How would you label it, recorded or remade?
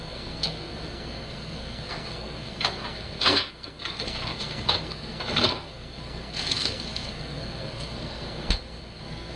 remade